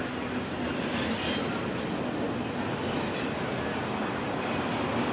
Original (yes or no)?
yes